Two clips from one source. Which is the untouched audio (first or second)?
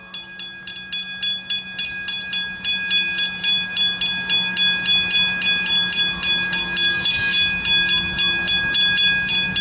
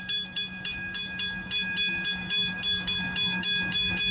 first